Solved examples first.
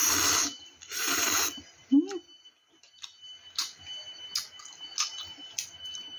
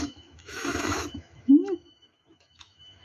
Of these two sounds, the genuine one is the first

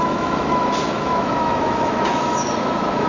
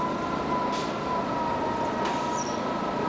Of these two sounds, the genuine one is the second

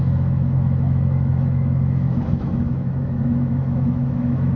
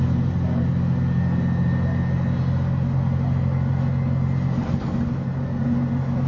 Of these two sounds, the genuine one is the second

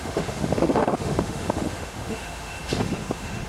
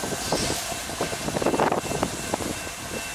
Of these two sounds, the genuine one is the second